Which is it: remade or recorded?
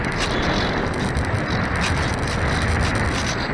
recorded